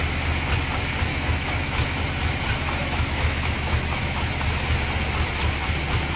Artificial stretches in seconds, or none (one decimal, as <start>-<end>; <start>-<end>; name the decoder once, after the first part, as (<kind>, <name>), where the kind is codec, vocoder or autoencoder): 1.1-2.0 (autoencoder, DAC-VAE); 2.8-4.3